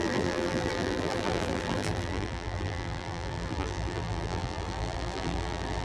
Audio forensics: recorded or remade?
remade